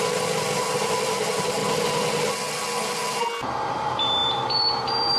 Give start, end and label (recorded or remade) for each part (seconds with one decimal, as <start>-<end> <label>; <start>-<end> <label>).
0.0-1.6 remade; 1.6-3.7 recorded; 3.7-5.2 remade